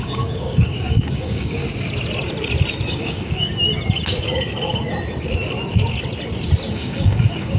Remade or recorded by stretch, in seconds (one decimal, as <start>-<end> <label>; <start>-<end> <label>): 0.0-1.6 remade; 1.6-2.9 recorded; 2.9-3.5 remade; 3.5-6.7 recorded; 6.7-7.6 remade